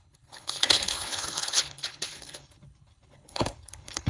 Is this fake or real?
fake